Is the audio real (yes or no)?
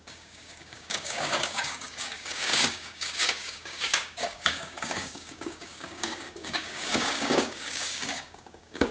no